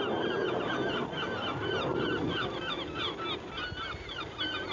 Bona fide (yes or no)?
yes